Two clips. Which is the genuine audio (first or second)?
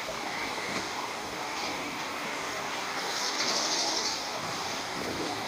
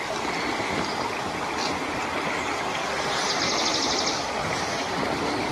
second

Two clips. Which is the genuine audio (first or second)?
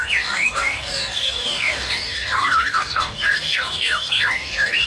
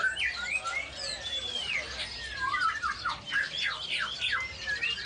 second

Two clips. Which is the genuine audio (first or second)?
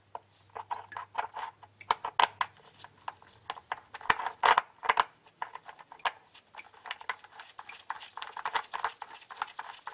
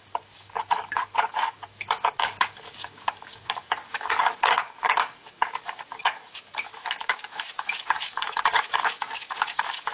first